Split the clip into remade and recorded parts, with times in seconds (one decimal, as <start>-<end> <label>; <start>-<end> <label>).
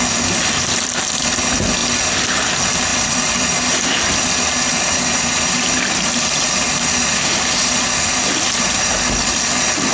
0.0-9.9 recorded